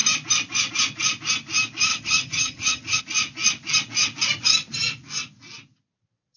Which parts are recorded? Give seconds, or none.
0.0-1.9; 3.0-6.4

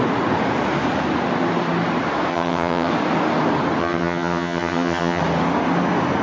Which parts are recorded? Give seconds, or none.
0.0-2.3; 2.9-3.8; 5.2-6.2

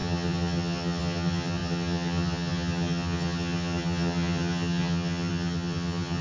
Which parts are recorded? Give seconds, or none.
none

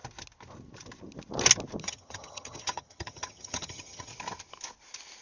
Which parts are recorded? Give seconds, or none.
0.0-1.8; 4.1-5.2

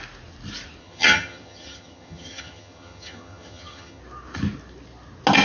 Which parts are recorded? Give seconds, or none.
0.0-0.8; 4.0-5.4

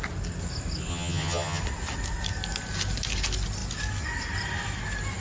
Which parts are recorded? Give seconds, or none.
0.0-0.9; 1.6-5.2

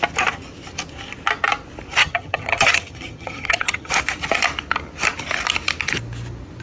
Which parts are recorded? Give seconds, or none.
0.0-2.0; 3.9-6.6